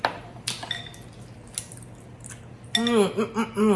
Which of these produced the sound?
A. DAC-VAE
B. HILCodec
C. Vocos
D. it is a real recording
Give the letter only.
D